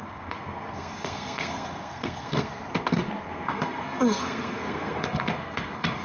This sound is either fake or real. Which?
fake